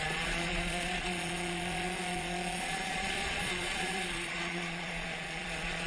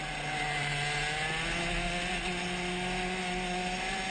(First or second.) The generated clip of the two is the first